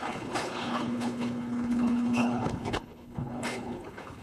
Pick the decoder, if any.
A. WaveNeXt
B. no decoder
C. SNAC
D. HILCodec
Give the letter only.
D